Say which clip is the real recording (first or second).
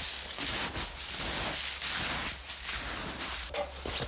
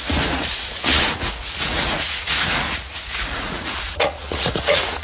first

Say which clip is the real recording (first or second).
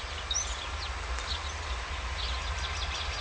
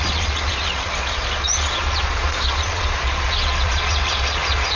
first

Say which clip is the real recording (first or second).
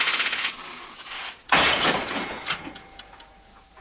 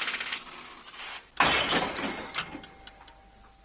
second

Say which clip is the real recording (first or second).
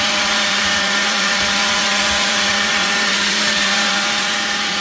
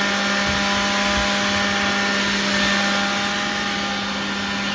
second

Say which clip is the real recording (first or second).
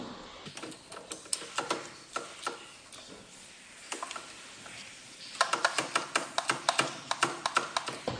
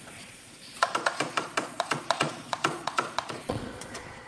first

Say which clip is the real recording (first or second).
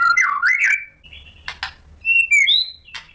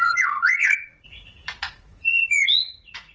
first